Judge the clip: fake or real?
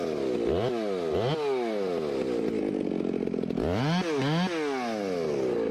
real